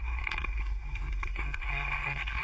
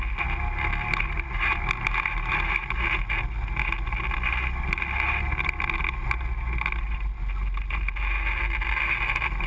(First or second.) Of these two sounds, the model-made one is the first